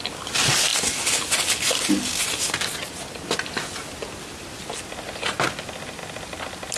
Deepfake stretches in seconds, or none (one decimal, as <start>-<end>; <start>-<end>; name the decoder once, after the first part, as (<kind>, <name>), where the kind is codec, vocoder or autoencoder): none